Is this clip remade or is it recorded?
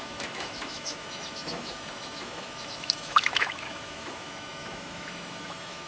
remade